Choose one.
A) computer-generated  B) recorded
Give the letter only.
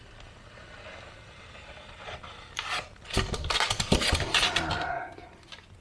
B